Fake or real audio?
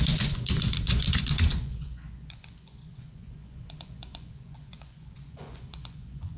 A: fake